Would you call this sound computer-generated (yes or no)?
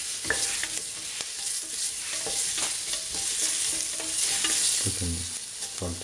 no